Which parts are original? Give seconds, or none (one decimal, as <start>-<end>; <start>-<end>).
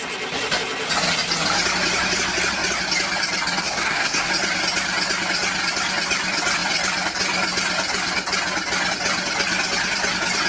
0.0-3.6; 4.3-10.5